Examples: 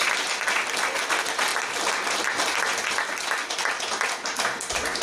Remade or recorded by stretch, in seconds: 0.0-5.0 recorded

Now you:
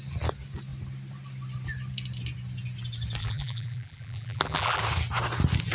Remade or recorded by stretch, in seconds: 0.0-3.2 recorded; 3.2-4.8 remade; 4.8-5.7 recorded

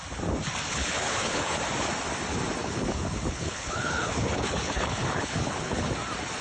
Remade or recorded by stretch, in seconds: 0.0-0.7 recorded; 0.7-1.6 remade; 1.6-2.6 recorded; 2.6-5.9 remade; 5.9-6.4 recorded

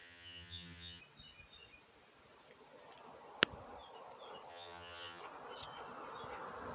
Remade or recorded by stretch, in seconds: 0.0-1.0 remade; 1.0-4.5 recorded; 4.5-5.2 remade; 5.2-6.7 recorded